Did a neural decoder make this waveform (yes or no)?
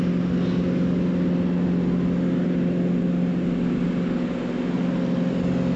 no